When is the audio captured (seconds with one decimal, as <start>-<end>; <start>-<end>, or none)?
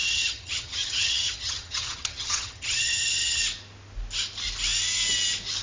3.4-5.6